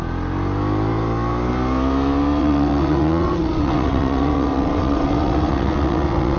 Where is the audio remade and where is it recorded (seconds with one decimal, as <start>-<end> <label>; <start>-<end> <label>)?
0.0-2.4 recorded; 2.4-6.4 remade